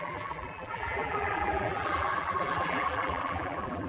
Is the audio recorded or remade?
remade